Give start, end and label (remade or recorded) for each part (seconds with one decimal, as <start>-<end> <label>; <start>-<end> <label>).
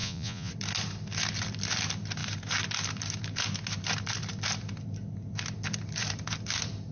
0.0-0.5 remade; 0.5-6.9 recorded